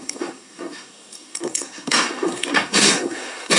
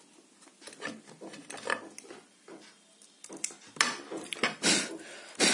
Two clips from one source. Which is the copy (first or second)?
first